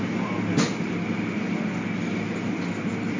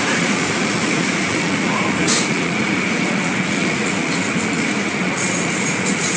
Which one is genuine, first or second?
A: first